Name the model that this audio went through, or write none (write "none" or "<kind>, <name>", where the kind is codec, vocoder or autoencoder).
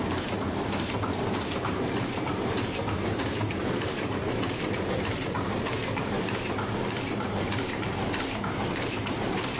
vocoder, BigVGAN v2